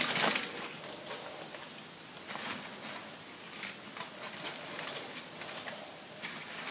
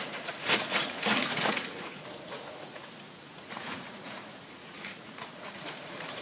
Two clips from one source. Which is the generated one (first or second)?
second